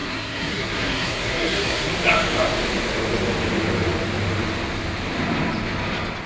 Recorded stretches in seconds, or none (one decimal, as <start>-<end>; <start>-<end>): 1.9-6.3